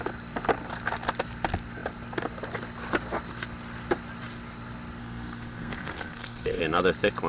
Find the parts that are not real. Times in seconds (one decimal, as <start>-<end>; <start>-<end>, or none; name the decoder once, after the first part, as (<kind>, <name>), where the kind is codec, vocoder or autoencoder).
5.0-6.6 (codec, SNAC)